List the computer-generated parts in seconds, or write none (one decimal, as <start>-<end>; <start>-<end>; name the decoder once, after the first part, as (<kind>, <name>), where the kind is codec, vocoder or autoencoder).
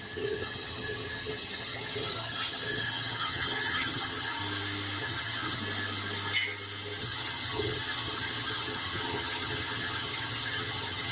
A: 0.0-4.4 (vocoder, HiFi-GAN); 5.0-5.6; 7.0-11.1